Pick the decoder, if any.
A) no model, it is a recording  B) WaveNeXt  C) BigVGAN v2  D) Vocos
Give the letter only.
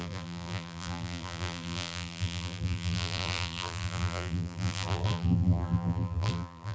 C